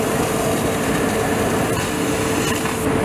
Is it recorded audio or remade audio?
recorded